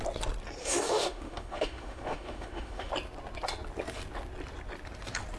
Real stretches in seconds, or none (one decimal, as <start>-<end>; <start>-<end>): 0.0-0.6; 2.9-5.4